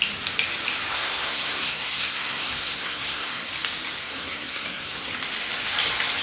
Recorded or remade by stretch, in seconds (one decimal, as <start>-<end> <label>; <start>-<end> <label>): 0.0-0.9 recorded; 0.9-3.5 remade; 3.5-4.0 recorded; 4.0-5.1 remade; 5.1-6.2 recorded